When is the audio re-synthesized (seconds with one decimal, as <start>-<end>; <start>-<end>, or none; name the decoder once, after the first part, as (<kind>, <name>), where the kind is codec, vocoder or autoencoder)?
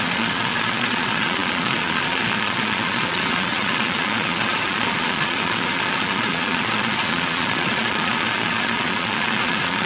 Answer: 0.0-9.9 (vocoder, Vocos)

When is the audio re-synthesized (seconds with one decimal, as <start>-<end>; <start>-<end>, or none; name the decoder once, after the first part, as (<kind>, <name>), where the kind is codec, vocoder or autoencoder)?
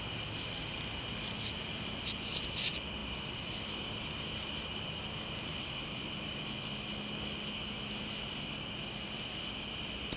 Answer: none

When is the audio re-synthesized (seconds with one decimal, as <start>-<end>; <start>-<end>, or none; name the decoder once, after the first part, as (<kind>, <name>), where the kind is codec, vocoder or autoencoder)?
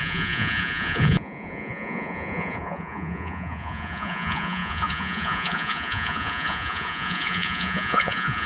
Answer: 0.0-8.5 (vocoder, Vocos)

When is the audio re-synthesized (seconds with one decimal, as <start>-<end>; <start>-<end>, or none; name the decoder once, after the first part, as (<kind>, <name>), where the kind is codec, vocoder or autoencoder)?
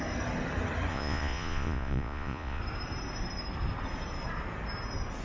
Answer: 0.9-2.6 (vocoder, Vocos)